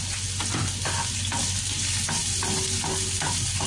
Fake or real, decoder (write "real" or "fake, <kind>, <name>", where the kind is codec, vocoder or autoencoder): real